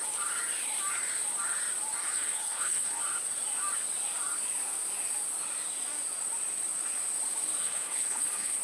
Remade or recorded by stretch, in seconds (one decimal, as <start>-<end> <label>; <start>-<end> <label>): 0.0-2.0 recorded; 2.0-3.0 remade; 3.0-7.6 recorded; 7.6-8.6 remade